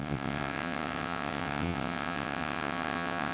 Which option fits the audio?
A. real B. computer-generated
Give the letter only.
B